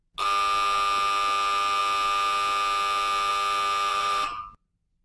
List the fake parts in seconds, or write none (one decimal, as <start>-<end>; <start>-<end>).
3.9-4.4

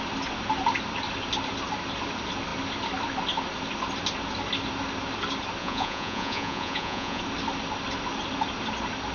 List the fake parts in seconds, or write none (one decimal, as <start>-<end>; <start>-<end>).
5.6-7.2

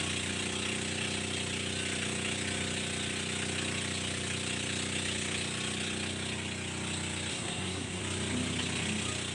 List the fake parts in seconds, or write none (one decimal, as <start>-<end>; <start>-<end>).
7.3-8.0

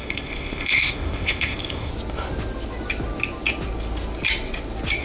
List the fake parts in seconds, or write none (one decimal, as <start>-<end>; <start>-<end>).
0.0-1.9

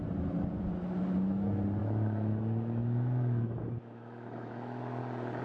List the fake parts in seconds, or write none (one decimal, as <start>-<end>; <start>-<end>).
1.8-5.0

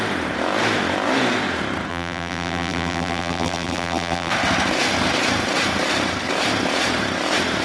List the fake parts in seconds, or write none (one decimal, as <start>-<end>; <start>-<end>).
1.9-4.3